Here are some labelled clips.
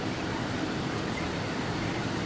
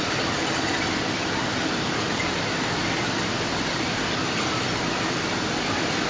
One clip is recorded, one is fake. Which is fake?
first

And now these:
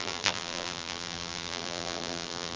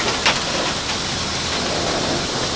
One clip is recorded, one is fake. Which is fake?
first